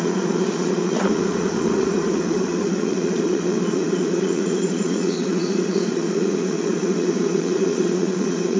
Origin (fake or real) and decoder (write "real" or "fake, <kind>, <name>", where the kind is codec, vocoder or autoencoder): fake, vocoder, Vocos